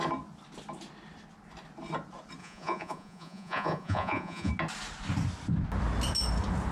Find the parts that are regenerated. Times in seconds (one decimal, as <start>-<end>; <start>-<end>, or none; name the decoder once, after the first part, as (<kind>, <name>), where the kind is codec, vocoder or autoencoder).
2.4-4.5 (vocoder, Vocos)